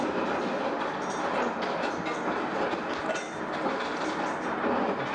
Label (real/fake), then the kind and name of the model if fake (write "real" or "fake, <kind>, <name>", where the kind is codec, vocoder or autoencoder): real